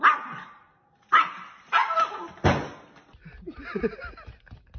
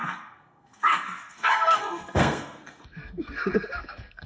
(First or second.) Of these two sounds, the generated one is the second